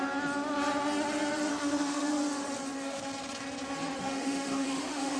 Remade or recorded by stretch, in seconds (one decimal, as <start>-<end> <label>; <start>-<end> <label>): 0.0-1.5 recorded; 1.5-2.1 remade; 2.1-4.0 recorded; 4.0-5.2 remade